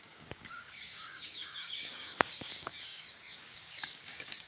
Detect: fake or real fake